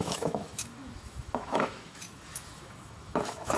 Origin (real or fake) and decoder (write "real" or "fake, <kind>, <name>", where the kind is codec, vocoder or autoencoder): fake, autoencoder, DAC-VAE